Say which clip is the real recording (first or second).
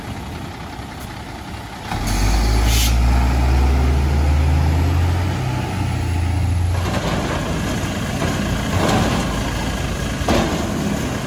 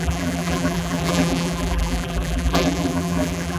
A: first